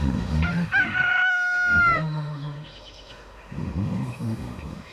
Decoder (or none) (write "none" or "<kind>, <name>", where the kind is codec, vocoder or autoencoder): autoencoder, DAC-VAE